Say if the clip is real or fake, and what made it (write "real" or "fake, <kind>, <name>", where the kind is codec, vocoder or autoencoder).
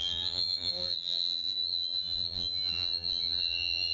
fake, vocoder, BigVGAN v2